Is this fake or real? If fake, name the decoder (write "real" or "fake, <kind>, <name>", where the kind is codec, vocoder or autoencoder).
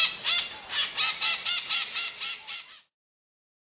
real